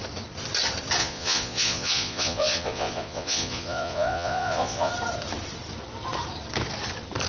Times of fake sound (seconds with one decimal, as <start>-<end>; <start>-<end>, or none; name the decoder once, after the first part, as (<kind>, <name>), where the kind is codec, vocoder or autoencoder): 1.0-4.9 (vocoder, Vocos)